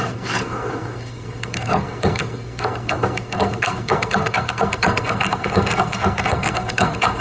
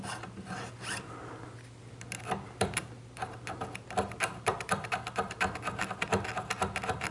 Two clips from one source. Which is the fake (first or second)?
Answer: first